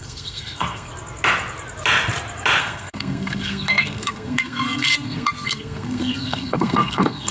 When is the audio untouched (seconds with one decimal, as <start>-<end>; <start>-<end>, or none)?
0.9-2.6

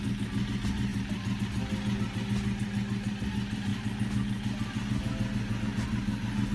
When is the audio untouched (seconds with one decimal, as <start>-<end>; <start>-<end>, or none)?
0.0-6.5

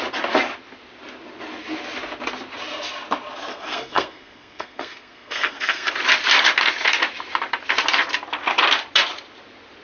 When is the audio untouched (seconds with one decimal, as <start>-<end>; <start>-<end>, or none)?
0.0-3.5; 5.9-9.8

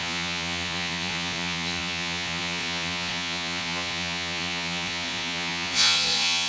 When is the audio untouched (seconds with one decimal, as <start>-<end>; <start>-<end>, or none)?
none

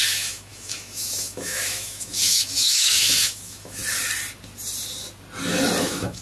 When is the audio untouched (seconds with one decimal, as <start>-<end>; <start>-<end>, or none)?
3.8-5.8